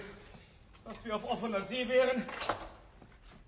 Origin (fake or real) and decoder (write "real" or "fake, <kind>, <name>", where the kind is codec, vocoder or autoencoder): real